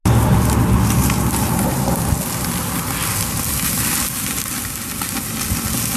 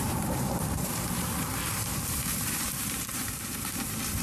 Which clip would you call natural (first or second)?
first